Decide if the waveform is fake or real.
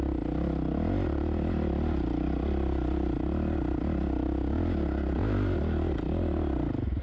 real